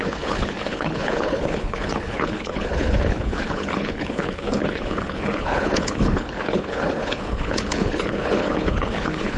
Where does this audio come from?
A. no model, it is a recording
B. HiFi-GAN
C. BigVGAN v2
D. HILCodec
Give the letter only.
D